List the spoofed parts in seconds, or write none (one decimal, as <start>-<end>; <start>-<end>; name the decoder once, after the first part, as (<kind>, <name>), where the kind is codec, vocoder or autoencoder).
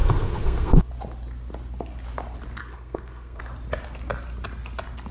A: 0.0-0.9 (codec, SNAC); 2.6-3.4